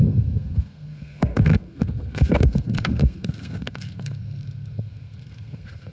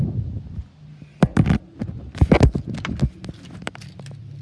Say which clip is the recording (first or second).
second